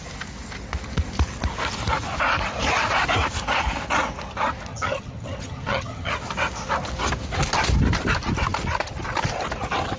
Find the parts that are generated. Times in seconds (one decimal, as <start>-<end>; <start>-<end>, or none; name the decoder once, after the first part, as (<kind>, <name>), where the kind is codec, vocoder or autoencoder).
4.7-6.1 (vocoder, HiFi-GAN)